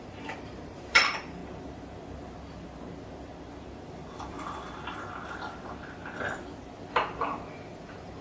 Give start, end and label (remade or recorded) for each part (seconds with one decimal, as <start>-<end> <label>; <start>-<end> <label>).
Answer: 0.0-1.4 remade; 1.4-5.5 recorded; 5.5-6.0 remade; 6.0-6.9 recorded; 6.9-8.2 remade